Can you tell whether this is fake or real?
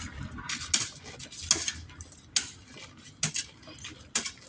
real